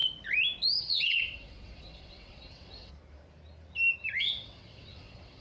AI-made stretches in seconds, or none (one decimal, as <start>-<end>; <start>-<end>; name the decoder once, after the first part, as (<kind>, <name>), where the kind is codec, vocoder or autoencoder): 0.8-2.9 (vocoder, WaveNeXt); 4.2-5.4